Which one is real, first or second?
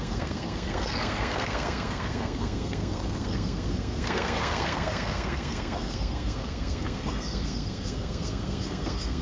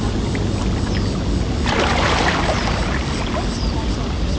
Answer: second